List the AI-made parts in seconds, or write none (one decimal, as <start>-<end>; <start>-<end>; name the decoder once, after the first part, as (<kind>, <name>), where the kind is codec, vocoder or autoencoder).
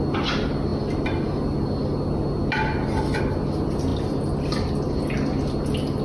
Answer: none